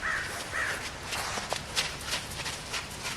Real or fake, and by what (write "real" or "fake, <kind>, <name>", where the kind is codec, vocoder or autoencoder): real